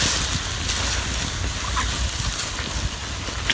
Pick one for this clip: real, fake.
real